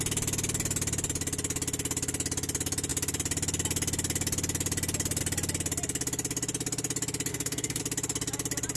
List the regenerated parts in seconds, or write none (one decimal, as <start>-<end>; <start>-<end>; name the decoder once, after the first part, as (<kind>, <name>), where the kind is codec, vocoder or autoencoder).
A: 7.3-7.8 (codec, SNAC)

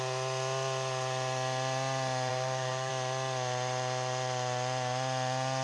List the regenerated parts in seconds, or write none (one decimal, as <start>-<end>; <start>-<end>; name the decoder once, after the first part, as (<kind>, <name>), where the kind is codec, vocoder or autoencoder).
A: 2.3-2.9 (codec, SNAC)

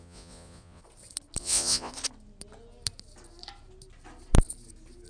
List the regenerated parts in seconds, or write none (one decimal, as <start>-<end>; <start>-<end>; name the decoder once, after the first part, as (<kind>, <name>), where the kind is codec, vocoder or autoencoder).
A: 0.0-0.8 (vocoder, Vocos); 1.4-1.9

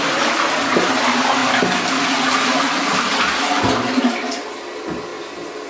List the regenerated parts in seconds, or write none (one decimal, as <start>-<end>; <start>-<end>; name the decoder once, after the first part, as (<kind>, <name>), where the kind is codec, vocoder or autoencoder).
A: none

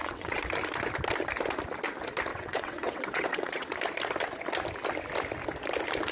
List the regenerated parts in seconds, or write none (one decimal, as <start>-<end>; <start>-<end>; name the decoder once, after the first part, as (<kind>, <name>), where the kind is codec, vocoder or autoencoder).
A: 0.0-0.5 (vocoder, WaveNeXt); 2.3-3.8

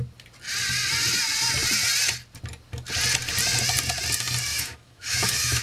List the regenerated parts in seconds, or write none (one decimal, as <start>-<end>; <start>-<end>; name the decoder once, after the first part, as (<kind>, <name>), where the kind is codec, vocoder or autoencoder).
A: 4.5-5.6 (autoencoder, DAC-VAE)